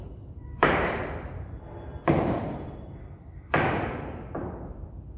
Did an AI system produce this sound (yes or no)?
yes